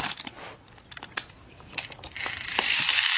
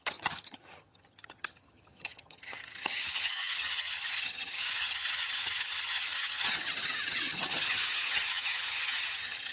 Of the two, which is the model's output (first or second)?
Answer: second